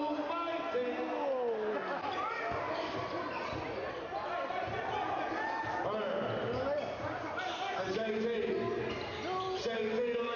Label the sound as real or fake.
real